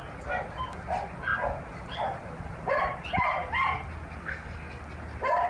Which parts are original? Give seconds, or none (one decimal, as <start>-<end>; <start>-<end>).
0.0-4.2; 4.8-5.5